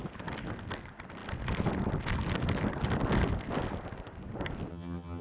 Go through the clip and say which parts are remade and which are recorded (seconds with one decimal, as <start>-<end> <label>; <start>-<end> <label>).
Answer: 0.0-4.7 recorded; 4.7-5.2 remade